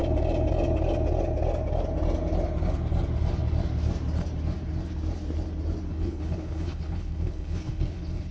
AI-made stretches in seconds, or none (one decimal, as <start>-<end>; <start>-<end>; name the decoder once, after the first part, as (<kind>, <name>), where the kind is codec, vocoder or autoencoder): 5.9-8.3 (codec, HILCodec)